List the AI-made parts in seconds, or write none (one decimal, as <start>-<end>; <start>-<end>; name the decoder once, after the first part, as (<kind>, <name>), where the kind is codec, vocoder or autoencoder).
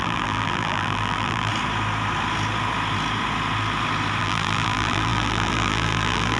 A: 0.0-1.5 (vocoder, BigVGAN v2); 4.2-6.4